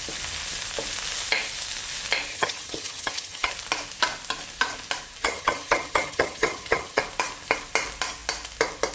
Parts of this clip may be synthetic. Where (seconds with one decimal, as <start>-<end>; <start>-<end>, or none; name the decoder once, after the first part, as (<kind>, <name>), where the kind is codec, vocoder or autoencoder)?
2.3-3.5 (vocoder, HiFi-GAN); 5.2-7.0